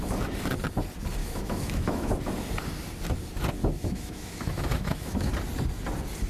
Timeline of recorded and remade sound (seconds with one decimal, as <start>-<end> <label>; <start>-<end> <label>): 0.0-1.2 recorded; 1.2-2.1 remade; 2.1-3.6 recorded; 3.6-5.3 remade; 5.3-6.3 recorded